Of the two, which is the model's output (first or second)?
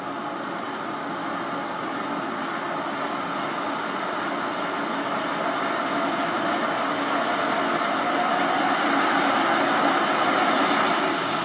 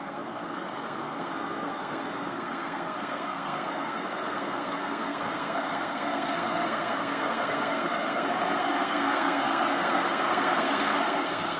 second